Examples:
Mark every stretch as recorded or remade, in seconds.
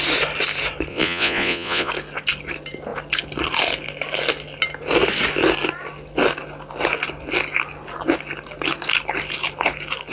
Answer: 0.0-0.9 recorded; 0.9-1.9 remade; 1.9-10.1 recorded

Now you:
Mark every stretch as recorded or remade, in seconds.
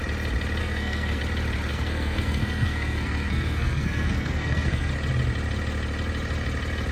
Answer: 0.0-0.6 recorded; 0.6-1.2 remade; 1.2-1.7 recorded; 1.7-4.9 remade; 4.9-6.9 recorded